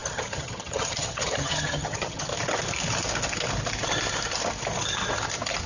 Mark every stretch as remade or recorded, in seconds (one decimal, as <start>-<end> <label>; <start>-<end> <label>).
0.0-2.3 remade; 2.3-5.7 recorded